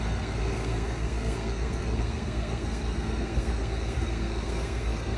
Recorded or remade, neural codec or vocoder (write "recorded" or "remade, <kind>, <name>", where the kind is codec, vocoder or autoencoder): remade, codec, SNAC